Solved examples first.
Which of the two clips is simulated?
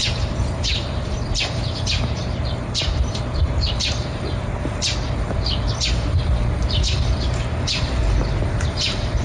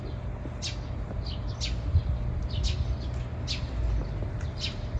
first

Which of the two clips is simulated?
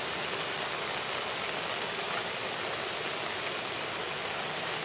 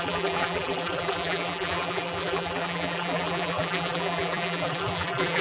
second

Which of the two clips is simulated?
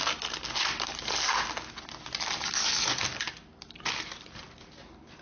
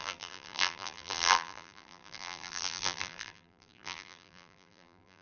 second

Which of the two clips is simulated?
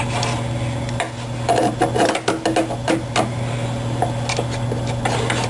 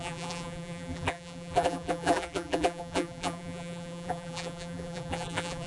second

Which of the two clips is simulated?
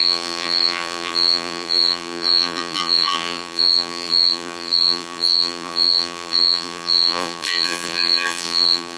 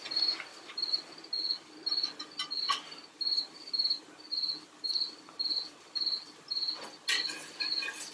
first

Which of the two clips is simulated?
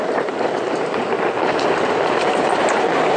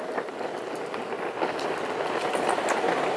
first